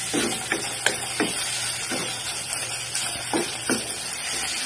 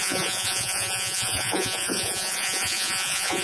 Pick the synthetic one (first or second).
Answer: second